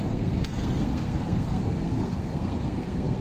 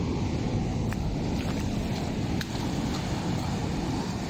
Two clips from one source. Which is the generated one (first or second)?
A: first